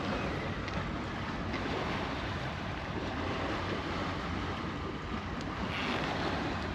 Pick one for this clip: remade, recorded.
recorded